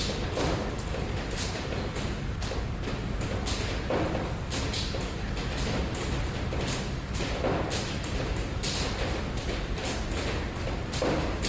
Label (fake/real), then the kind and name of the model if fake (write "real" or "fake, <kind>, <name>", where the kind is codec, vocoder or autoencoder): real